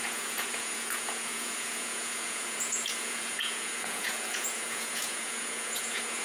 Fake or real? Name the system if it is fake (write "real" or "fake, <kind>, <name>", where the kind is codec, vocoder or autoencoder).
fake, vocoder, Vocos